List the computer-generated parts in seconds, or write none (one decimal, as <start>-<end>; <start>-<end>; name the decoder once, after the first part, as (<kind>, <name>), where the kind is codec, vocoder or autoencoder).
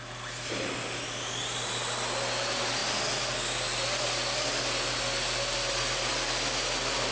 none